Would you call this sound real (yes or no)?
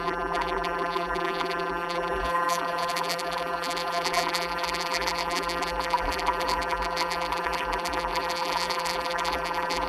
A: no